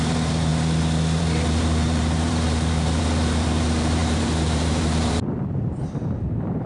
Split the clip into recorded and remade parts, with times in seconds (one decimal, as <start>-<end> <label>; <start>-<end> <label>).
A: 0.0-0.5 remade; 0.5-1.2 recorded; 1.2-6.7 remade